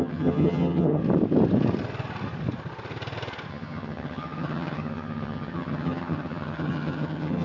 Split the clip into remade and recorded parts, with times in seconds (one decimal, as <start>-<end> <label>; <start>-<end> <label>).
0.0-1.0 remade; 1.0-3.5 recorded; 3.5-7.4 remade